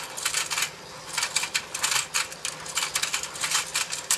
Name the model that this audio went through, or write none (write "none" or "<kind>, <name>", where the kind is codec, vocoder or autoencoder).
none